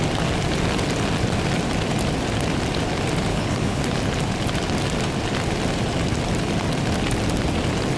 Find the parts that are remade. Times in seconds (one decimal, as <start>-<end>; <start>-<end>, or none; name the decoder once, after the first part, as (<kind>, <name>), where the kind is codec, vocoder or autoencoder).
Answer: 3.3-3.8 (codec, HILCodec)